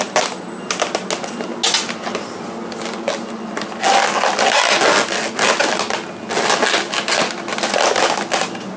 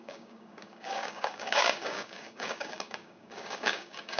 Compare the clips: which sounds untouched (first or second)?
first